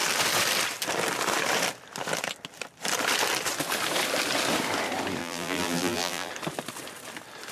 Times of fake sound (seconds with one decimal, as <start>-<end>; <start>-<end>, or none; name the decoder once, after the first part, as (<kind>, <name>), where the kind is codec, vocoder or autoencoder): 5.2-6.3 (vocoder, BigVGAN v2)